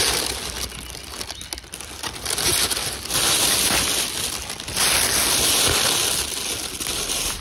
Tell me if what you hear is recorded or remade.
recorded